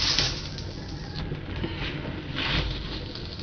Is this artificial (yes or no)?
no